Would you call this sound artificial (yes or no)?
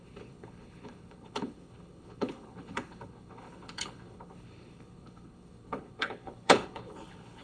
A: yes